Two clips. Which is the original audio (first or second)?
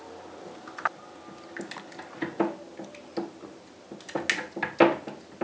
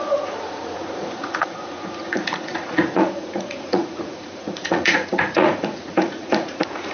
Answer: first